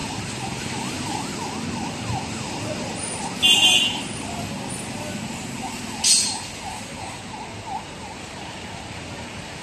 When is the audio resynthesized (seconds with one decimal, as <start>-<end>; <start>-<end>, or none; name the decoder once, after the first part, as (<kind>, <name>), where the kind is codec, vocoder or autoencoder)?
0.0-4.5 (vocoder, BigVGAN v2)